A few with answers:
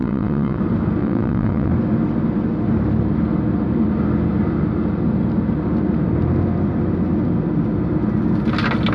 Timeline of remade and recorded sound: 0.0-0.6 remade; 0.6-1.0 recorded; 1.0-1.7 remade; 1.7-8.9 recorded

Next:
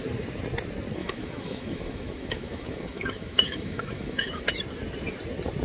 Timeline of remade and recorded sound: 0.0-1.0 recorded; 1.0-4.4 remade; 4.4-5.6 recorded

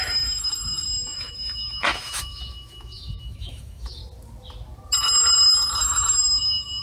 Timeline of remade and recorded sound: 0.0-4.0 remade; 4.0-5.8 recorded; 5.8-6.8 remade